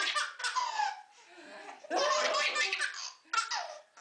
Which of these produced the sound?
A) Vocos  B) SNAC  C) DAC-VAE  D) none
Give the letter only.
D